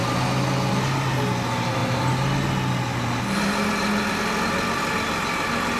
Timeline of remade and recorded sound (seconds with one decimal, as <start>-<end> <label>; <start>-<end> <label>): 0.0-5.8 recorded